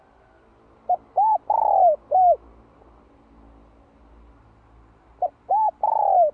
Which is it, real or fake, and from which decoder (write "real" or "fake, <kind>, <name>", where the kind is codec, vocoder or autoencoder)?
real